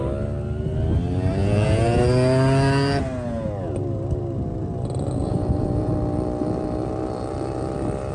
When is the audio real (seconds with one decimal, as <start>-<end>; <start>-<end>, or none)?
0.0-1.4; 2.0-5.2; 5.9-8.1